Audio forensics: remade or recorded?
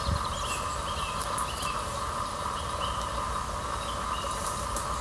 recorded